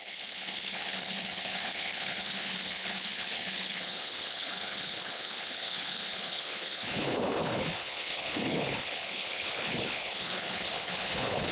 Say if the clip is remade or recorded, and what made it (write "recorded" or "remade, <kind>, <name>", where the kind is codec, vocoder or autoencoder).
remade, codec, HILCodec